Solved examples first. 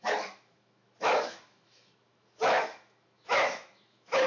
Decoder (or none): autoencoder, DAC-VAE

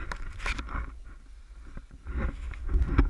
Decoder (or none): none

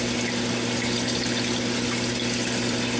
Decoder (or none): none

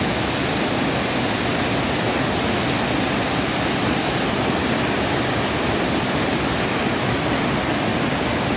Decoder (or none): none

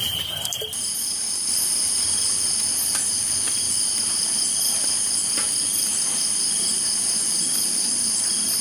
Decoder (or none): none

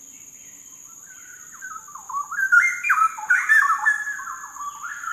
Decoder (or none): none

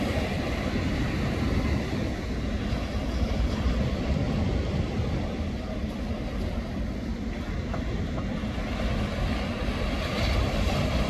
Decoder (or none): none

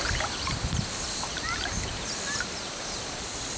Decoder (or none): none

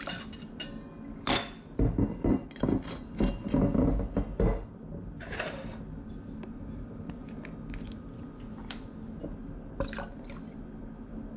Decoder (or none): none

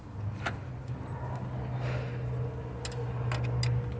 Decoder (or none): none